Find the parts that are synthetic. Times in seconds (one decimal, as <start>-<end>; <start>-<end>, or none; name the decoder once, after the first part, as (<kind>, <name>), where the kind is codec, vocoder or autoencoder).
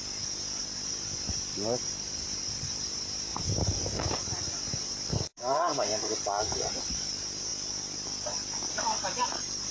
0.0-7.5 (vocoder, BigVGAN v2); 8.7-9.7